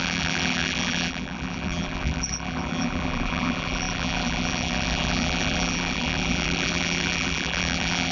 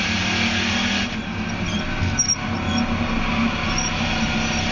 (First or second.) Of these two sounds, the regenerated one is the first